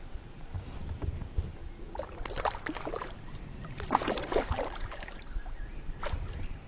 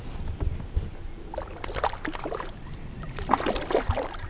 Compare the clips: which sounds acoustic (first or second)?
second